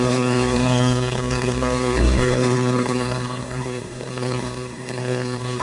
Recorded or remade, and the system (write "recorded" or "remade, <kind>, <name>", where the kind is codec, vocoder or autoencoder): remade, codec, SNAC